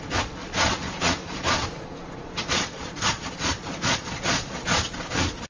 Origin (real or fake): fake